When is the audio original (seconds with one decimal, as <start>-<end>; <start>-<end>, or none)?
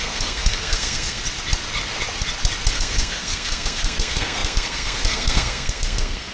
1.2-2.7